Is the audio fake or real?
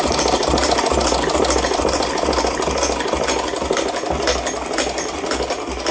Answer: real